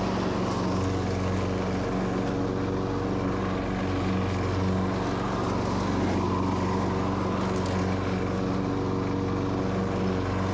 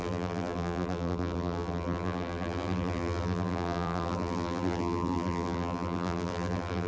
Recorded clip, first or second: first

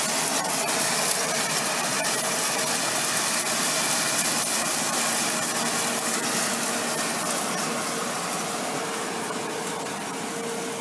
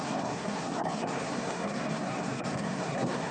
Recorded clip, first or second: first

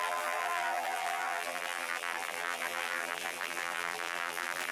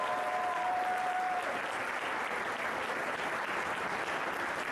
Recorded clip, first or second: second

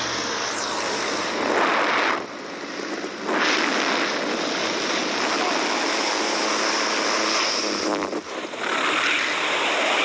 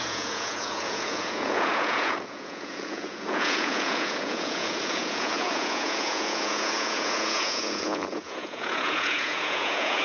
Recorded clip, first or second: first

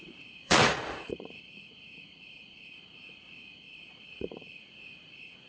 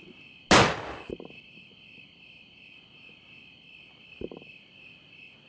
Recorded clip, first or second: second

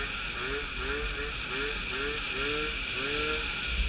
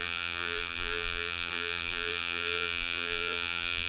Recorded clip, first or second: first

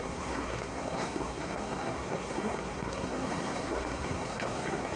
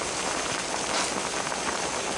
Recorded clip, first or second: second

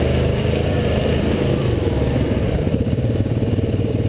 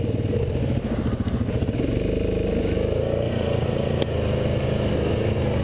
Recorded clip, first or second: second